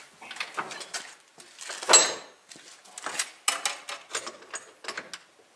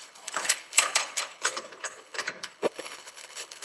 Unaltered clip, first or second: first